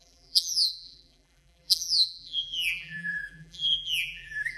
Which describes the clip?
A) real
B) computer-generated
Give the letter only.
B